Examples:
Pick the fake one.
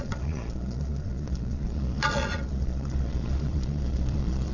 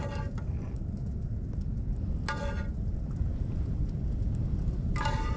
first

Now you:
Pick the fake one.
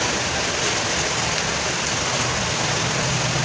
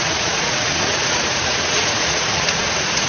second